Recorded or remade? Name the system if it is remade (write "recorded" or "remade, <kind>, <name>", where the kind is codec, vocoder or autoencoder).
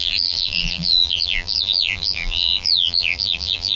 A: remade, vocoder, BigVGAN v2